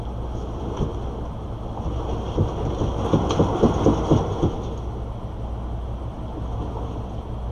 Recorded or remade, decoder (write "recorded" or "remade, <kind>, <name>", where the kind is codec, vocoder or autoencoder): recorded